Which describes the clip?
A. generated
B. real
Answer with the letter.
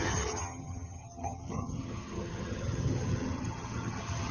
A